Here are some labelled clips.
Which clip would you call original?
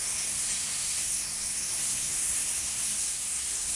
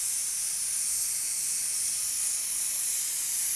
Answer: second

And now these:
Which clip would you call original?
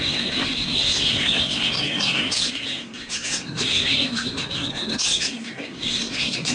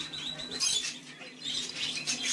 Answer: second